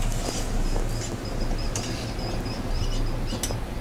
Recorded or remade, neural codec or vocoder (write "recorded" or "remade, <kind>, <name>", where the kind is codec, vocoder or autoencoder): recorded